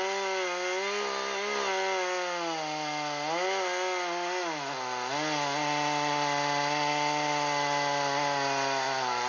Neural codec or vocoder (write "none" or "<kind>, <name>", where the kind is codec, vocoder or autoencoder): none